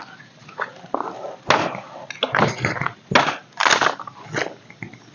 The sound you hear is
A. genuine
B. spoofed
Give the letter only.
A